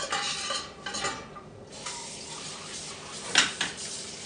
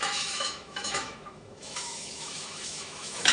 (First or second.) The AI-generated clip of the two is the second